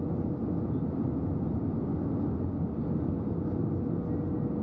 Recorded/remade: recorded